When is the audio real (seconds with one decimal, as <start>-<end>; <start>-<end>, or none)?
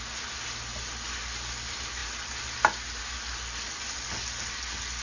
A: 0.0-5.0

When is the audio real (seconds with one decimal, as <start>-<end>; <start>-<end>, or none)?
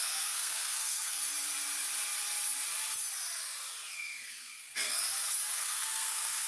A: 1.2-3.9; 5.0-5.5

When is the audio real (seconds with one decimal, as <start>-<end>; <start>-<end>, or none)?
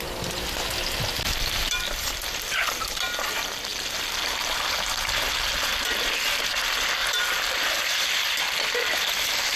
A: 0.0-9.6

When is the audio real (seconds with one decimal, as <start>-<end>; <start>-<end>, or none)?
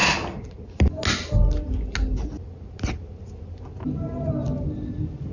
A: 0.0-5.3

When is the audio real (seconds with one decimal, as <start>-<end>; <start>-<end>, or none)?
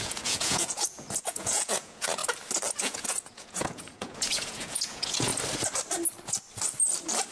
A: 2.2-2.8; 5.3-7.3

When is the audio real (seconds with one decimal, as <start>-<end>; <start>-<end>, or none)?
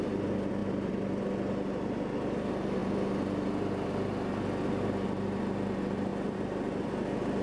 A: 0.0-0.6; 1.2-6.1; 6.9-7.4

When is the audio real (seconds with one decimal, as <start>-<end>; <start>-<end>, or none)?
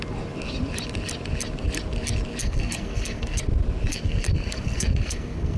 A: 0.0-2.4; 3.4-3.9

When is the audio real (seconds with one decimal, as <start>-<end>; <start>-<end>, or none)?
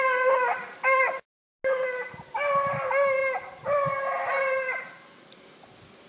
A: 0.0-6.1